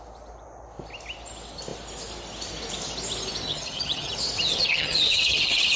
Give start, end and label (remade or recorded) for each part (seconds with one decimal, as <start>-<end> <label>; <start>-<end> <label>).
0.0-3.5 recorded; 3.5-4.1 remade; 4.1-4.5 recorded; 4.5-5.8 remade

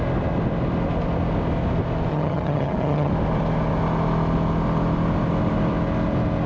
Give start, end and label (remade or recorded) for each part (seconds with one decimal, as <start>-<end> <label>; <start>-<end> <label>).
0.0-2.1 recorded; 2.1-3.1 remade; 3.1-6.5 recorded

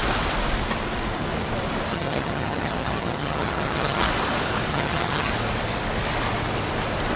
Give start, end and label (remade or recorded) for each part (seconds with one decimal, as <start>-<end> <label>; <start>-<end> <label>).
0.0-1.9 recorded; 1.9-4.1 remade; 4.1-4.7 recorded; 4.7-5.3 remade; 5.3-7.2 recorded

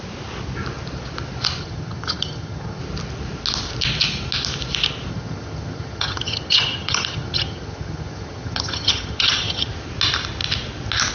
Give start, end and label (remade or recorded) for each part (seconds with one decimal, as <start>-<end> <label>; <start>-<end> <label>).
0.0-1.6 recorded; 1.6-2.8 remade; 2.8-5.1 recorded; 5.1-9.7 remade; 9.7-11.1 recorded

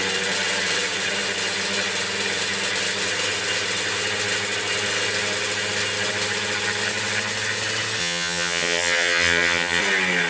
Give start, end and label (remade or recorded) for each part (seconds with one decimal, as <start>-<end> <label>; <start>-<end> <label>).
0.0-8.0 recorded; 8.0-9.8 remade; 9.8-10.3 recorded

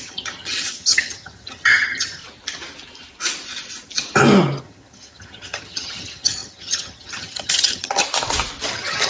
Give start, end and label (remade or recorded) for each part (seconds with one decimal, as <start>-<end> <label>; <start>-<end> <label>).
0.0-2.2 remade; 2.2-4.6 recorded; 4.6-8.0 remade; 8.0-8.7 recorded; 8.7-9.1 remade